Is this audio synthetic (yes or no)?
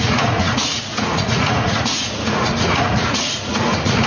yes